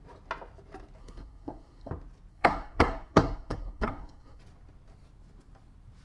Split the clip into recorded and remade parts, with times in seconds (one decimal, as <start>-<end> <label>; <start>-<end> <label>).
0.0-1.0 recorded; 1.0-1.9 remade; 1.9-2.3 recorded; 2.3-4.4 remade; 4.4-6.0 recorded